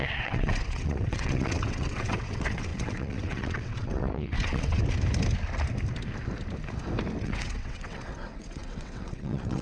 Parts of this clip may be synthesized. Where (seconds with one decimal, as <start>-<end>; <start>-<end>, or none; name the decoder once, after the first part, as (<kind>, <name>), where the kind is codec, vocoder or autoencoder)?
0.0-4.8 (vocoder, WaveNeXt); 7.2-9.6